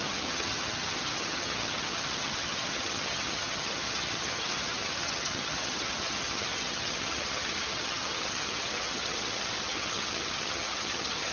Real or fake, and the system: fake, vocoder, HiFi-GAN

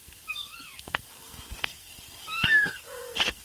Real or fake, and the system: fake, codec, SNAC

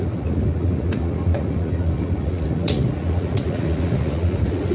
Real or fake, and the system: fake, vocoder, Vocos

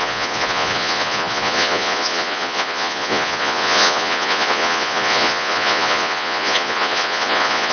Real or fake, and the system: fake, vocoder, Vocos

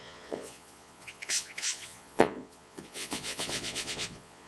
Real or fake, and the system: fake, vocoder, Vocos